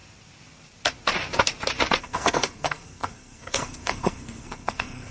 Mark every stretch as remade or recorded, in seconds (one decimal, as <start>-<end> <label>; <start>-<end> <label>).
0.0-2.0 recorded; 2.0-5.1 remade